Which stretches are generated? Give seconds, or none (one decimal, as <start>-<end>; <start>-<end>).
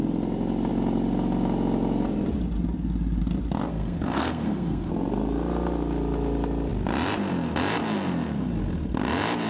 3.7-4.9